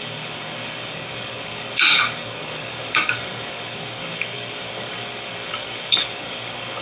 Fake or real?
fake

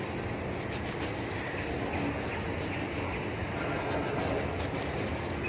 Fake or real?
real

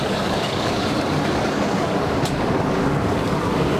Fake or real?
fake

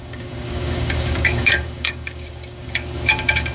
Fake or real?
fake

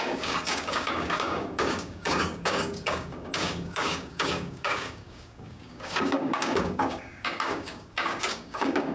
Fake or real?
fake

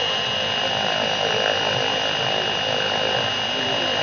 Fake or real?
real